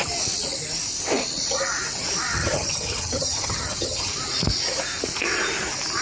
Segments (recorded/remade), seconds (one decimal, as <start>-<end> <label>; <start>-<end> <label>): 0.0-2.3 recorded; 2.3-4.1 remade; 4.1-6.0 recorded